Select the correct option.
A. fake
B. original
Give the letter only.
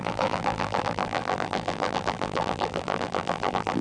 A